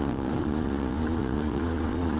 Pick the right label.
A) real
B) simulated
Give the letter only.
B